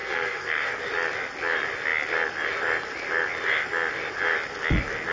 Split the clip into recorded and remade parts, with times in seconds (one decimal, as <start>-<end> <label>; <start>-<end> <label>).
0.0-0.8 remade; 0.8-5.1 recorded